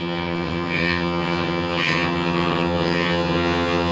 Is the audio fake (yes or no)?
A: yes